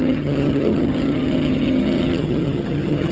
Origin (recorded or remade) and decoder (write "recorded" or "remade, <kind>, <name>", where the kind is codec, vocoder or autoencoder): remade, vocoder, HiFi-GAN